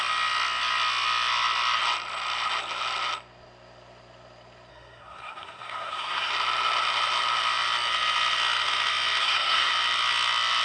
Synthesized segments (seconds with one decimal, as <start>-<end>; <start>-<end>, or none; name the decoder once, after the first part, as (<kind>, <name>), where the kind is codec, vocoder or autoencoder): 4.7-6.3 (codec, SNAC); 9.2-9.7